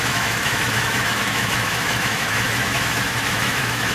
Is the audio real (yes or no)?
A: no